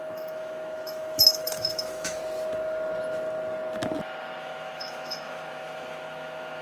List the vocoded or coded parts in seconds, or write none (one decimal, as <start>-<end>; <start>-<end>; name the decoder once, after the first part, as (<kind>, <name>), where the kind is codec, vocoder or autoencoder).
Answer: 0.0-2.2 (autoencoder, DAC-VAE); 4.4-6.6